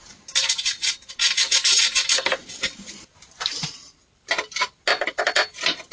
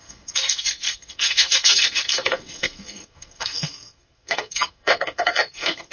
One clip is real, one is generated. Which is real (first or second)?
first